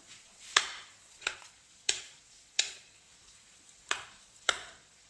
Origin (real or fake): fake